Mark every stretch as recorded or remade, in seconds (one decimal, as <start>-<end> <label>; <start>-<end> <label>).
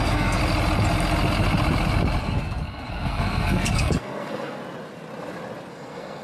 0.0-0.4 remade; 0.4-2.2 recorded; 2.2-4.6 remade; 4.6-5.7 recorded; 5.7-6.2 remade